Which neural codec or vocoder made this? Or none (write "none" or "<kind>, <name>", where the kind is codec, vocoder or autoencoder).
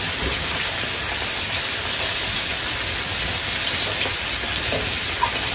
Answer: none